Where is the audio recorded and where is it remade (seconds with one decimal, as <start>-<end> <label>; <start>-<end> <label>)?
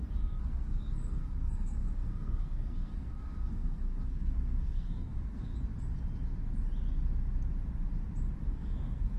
0.0-5.5 remade; 5.5-8.5 recorded; 8.5-9.2 remade